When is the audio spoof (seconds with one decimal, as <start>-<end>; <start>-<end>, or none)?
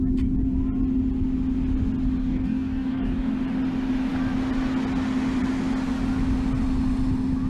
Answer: 2.2-3.3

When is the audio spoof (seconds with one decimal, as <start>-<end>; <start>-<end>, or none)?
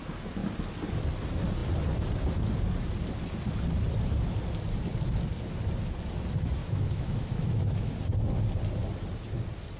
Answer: 6.6-7.9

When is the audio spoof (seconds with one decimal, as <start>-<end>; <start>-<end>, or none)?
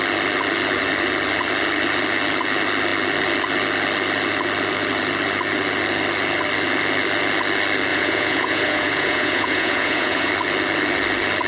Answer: 7.9-10.3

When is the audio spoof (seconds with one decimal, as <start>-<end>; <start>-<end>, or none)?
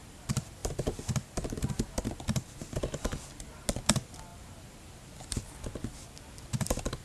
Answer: none